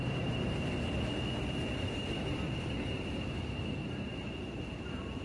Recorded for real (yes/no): no